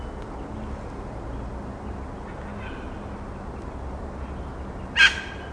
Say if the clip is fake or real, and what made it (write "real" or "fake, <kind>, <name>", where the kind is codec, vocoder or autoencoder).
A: real